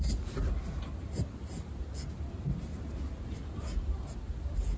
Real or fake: real